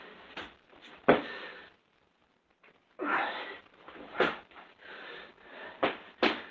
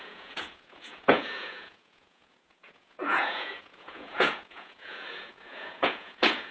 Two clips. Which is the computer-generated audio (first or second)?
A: second